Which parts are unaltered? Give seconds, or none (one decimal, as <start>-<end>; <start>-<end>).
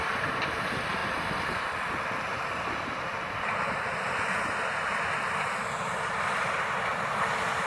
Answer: 0.0-7.7